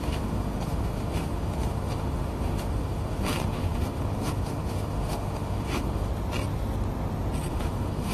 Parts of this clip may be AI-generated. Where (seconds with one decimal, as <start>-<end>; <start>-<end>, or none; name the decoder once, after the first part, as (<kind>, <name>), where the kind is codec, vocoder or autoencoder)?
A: 0.0-6.1 (autoencoder, DAC-VAE); 7.5-8.1